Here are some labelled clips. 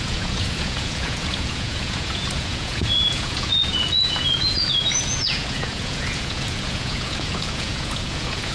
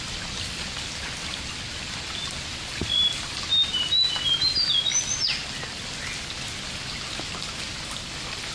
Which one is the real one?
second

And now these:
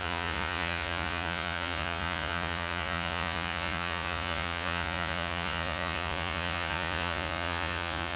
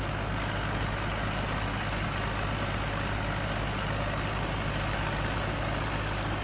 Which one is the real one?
second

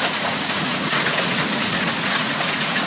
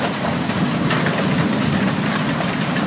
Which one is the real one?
second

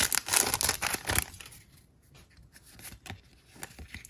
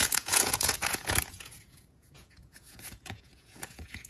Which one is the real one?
first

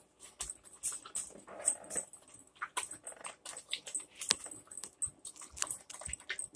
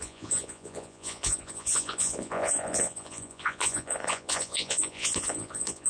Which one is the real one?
first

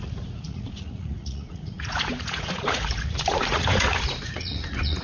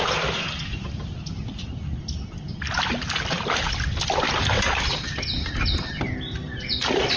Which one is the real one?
second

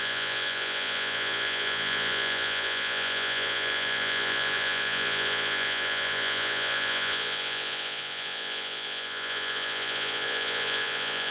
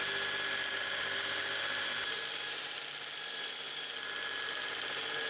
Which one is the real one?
second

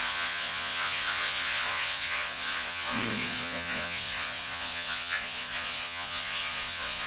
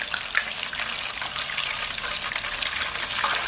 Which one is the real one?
second